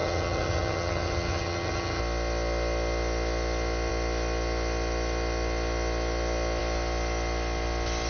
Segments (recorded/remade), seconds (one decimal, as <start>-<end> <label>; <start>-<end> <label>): 0.0-2.0 remade; 2.0-8.1 recorded